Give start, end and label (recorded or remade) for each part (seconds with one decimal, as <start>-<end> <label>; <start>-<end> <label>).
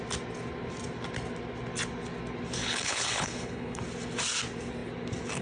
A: 0.0-2.6 recorded; 2.6-3.8 remade; 3.8-5.4 recorded